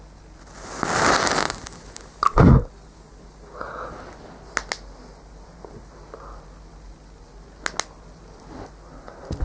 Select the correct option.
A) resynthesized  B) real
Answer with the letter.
B